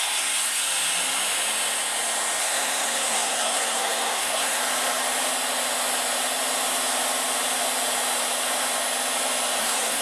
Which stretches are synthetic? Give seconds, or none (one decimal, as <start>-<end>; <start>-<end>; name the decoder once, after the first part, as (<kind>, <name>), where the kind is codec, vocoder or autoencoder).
0.0-0.6 (codec, SNAC); 2.4-4.6; 9.6-10.0

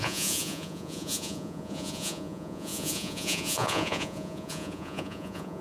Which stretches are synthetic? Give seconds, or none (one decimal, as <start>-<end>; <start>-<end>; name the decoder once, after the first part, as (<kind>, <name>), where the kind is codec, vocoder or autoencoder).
0.0-5.6 (vocoder, Vocos)

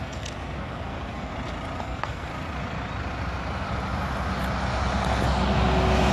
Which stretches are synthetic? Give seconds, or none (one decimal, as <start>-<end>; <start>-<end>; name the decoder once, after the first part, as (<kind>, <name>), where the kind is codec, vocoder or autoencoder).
0.0-1.3 (codec, SNAC); 1.8-2.3

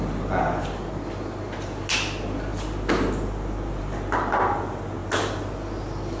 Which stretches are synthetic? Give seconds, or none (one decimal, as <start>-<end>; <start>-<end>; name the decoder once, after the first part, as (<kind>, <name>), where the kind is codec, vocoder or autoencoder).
none

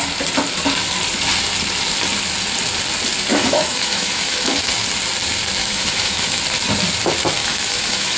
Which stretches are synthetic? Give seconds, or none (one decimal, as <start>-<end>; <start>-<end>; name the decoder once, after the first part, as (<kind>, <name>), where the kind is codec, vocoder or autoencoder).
3.3-4.7 (autoencoder, DAC-VAE); 5.6-6.4; 7.4-8.2

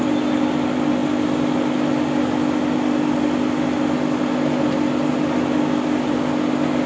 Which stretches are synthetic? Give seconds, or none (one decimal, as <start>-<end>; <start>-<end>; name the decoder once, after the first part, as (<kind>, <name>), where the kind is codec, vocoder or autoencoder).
none

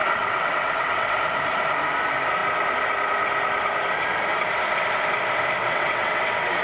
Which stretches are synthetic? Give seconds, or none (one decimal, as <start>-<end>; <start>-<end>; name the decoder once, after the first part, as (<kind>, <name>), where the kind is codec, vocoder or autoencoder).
0.0-1.1 (vocoder, WaveNeXt); 5.6-6.6